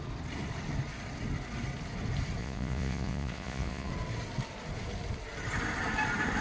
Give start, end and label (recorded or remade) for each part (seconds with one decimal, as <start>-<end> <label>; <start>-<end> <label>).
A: 0.0-2.4 recorded; 2.4-3.9 remade; 3.9-6.4 recorded